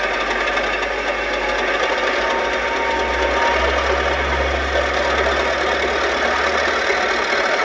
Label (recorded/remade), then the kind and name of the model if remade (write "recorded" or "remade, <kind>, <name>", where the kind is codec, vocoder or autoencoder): recorded